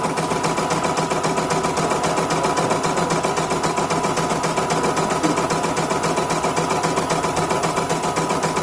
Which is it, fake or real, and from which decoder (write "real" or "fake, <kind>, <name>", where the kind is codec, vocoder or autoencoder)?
real